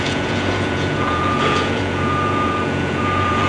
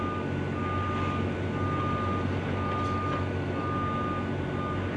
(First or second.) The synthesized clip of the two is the first